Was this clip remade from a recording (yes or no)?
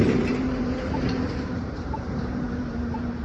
yes